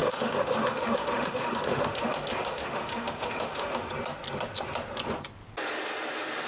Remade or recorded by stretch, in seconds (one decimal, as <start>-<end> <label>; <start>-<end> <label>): 0.0-3.9 remade; 3.9-6.5 recorded